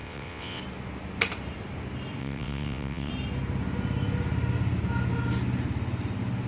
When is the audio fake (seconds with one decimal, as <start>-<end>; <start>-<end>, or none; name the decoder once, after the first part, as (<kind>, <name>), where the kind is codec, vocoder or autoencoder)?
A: 0.0-0.6 (vocoder, WaveNeXt); 2.2-3.1